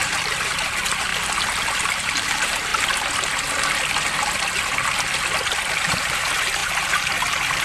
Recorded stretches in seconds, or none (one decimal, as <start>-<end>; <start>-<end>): 1.1-1.7; 2.7-5.8